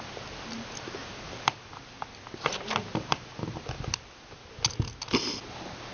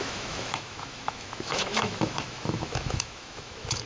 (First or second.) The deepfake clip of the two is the second